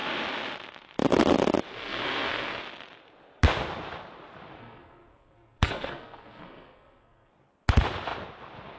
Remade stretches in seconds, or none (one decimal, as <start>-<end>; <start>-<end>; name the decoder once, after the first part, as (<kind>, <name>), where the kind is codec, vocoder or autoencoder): 1.7-2.6 (codec, SNAC); 4.6-7.3